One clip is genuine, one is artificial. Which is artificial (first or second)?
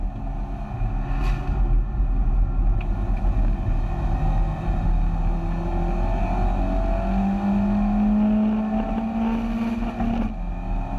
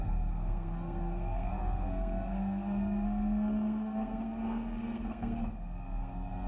second